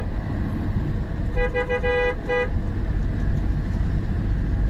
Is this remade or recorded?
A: recorded